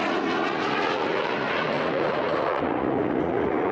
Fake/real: fake